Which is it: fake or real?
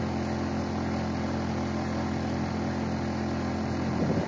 real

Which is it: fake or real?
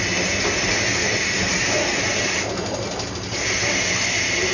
real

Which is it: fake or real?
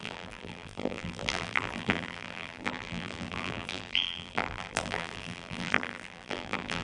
fake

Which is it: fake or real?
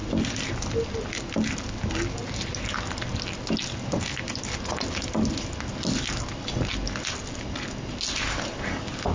real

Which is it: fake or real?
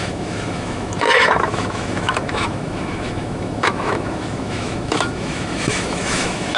fake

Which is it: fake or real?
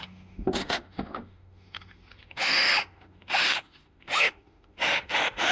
fake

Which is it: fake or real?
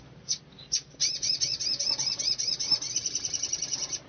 fake